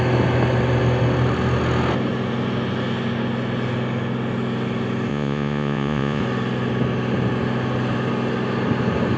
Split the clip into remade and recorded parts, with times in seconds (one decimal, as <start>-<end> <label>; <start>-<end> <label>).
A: 0.0-5.1 recorded; 5.1-6.2 remade; 6.2-9.2 recorded